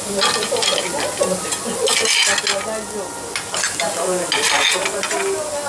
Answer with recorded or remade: recorded